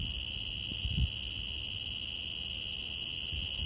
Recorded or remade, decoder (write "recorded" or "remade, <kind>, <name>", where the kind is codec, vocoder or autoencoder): recorded